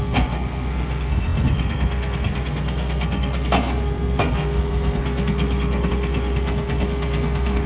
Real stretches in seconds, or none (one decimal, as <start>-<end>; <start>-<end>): none